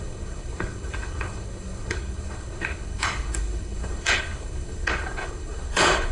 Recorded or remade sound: remade